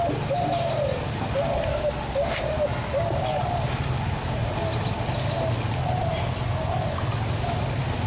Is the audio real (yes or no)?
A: yes